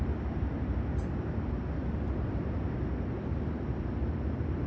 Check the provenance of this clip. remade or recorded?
recorded